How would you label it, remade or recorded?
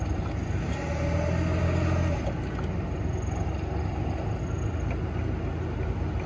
recorded